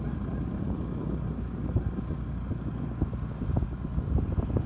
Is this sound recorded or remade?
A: recorded